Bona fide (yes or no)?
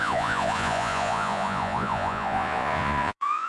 no